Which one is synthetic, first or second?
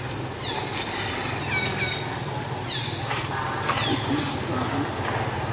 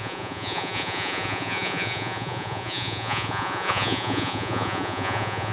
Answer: second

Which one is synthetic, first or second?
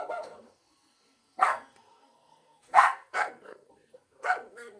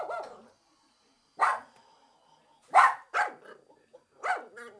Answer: first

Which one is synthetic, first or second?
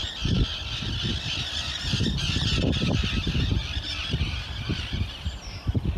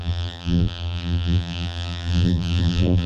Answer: second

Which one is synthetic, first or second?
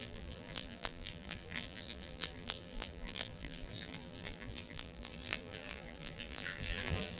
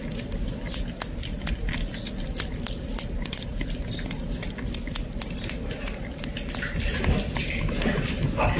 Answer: first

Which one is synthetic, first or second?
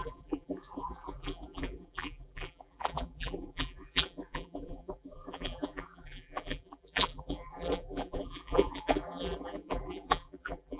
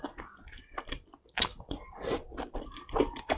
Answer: first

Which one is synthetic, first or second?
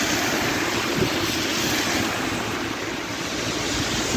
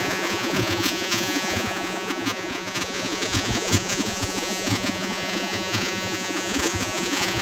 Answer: second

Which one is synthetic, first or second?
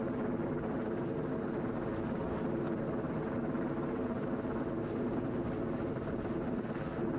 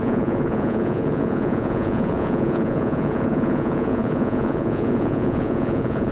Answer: second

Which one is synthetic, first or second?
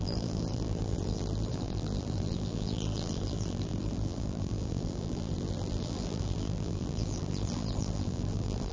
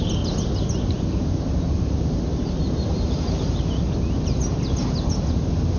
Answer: first